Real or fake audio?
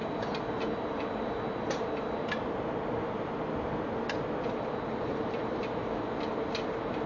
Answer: real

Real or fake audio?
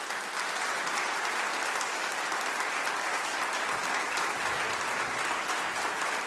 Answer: real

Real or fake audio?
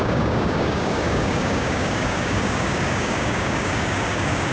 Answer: fake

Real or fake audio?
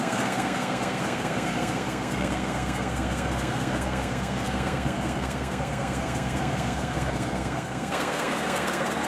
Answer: fake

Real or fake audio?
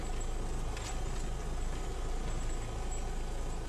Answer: real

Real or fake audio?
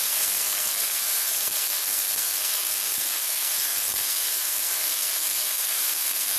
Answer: fake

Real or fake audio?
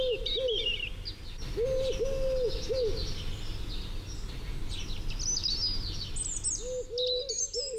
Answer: real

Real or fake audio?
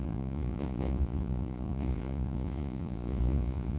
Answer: fake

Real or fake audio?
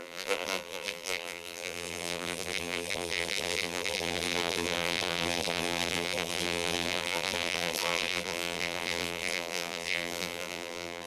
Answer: fake